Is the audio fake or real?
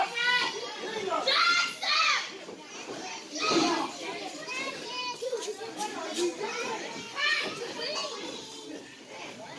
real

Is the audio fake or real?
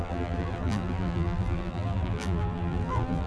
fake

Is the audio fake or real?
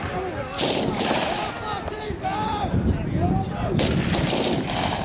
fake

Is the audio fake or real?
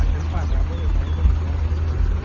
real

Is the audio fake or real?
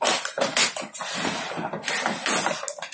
real